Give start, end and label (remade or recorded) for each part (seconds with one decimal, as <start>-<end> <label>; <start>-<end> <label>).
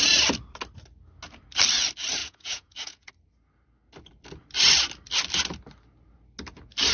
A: 0.0-2.2 recorded; 2.2-3.1 remade; 3.1-6.9 recorded